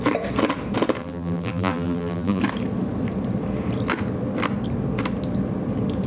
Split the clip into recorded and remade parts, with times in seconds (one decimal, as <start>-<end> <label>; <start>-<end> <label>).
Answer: 0.0-1.0 recorded; 1.0-2.4 remade; 2.4-6.1 recorded